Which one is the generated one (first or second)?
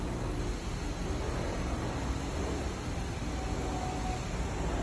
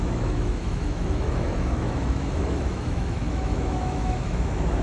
second